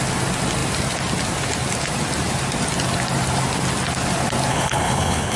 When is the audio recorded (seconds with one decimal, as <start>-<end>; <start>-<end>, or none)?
0.0-4.5